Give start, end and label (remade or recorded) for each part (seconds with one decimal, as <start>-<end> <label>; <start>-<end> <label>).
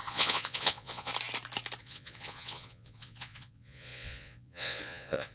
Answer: 0.0-1.1 remade; 1.1-1.8 recorded; 1.8-5.3 remade